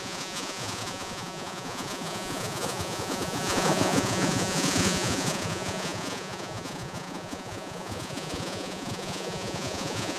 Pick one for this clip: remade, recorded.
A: remade